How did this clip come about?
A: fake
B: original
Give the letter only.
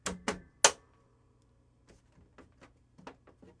B